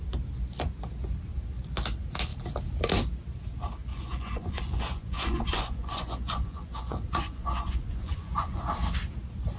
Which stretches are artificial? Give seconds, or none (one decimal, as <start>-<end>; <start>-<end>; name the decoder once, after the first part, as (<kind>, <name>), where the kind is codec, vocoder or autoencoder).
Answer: 3.9-8.6 (vocoder, Vocos)